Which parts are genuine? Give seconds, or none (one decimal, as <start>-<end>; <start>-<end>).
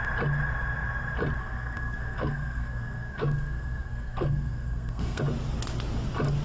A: 0.0-1.4; 5.2-6.4